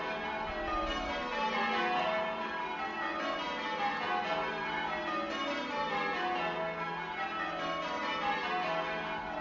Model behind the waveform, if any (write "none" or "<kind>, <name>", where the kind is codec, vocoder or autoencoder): none